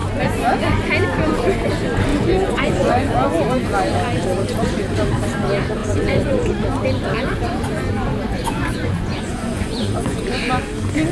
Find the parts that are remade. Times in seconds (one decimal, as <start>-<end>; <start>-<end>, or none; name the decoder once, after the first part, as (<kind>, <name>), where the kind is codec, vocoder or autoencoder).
2.1-2.9 (vocoder, Vocos); 5.8-6.5; 8.3-10.2